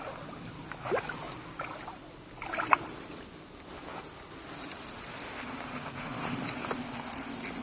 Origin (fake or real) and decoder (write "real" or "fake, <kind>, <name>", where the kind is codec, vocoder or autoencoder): real